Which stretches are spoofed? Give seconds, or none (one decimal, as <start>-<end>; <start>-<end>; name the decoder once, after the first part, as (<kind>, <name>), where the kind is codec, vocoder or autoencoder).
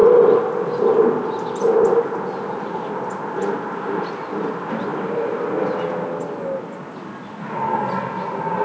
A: none